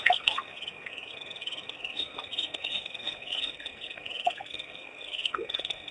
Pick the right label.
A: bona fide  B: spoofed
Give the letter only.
B